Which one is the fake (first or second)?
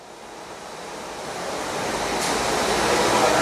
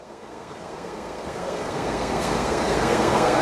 second